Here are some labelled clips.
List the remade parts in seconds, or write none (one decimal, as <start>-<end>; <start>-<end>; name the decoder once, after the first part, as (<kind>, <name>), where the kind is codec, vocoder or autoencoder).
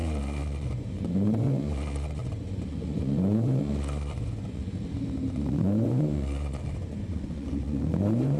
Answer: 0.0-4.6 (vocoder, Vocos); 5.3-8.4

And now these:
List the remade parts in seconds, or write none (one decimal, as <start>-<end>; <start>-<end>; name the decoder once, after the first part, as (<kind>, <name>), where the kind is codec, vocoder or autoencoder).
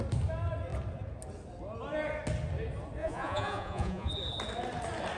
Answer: 3.0-4.1 (vocoder, Vocos)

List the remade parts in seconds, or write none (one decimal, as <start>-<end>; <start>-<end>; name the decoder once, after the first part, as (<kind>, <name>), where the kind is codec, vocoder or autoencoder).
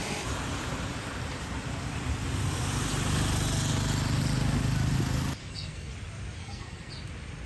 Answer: 5.4-5.9 (codec, SNAC); 6.4-6.9